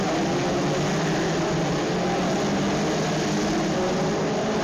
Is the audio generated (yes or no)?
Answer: no